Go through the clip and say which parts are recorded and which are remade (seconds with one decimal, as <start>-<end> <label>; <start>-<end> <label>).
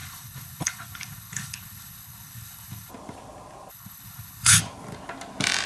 0.0-2.9 remade; 2.9-3.7 recorded; 3.7-4.6 remade; 4.6-5.7 recorded